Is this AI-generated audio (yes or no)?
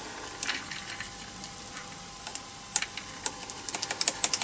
no